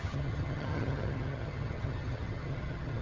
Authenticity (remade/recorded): remade